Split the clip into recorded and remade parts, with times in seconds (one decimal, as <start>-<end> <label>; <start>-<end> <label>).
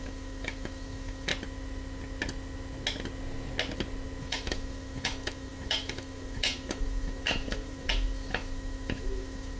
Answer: 0.0-1.3 remade; 1.3-4.2 recorded; 4.2-9.6 remade